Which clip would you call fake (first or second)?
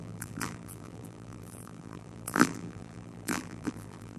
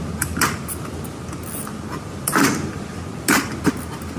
first